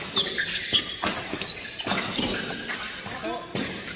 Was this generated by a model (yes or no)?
no